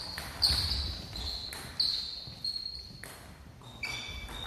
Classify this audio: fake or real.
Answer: real